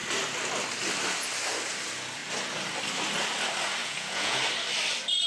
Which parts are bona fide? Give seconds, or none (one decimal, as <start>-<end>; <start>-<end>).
0.0-3.8; 4.4-5.3